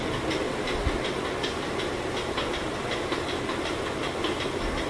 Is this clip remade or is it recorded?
recorded